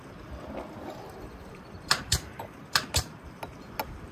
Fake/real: real